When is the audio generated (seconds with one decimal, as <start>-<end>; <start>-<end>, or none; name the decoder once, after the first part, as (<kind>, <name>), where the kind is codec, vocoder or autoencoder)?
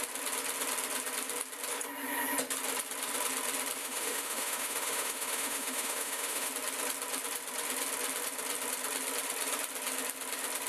3.8-6.5 (autoencoder, DAC-VAE)